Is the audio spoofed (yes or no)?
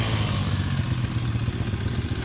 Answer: no